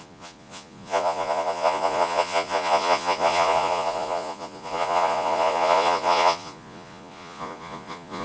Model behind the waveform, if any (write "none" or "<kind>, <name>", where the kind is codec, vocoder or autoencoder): vocoder, Vocos